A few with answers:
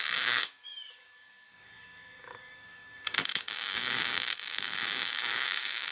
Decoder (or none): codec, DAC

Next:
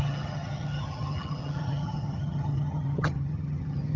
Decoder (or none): vocoder, HiFi-GAN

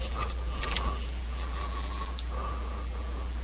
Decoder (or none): vocoder, BigVGAN v2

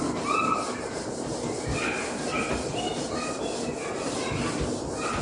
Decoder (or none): vocoder, BigVGAN v2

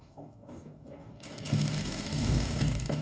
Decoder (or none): codec, DAC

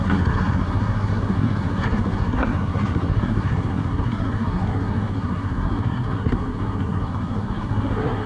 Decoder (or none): codec, SNAC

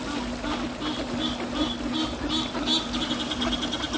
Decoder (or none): none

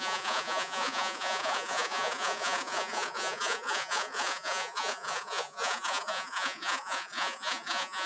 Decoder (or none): vocoder, Vocos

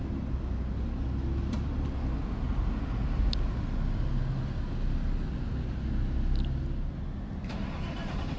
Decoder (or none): none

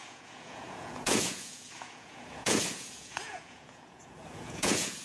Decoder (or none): vocoder, Vocos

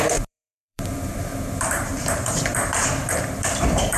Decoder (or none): vocoder, BigVGAN v2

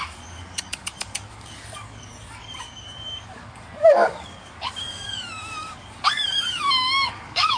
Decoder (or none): codec, DAC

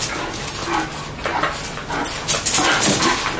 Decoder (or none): none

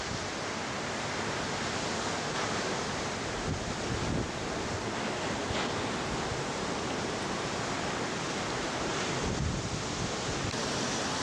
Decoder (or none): none